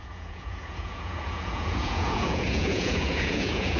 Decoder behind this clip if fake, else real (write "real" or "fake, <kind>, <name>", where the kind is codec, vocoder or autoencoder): fake, vocoder, Vocos